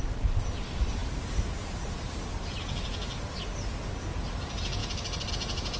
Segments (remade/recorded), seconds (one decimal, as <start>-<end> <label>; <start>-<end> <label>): 0.0-5.8 recorded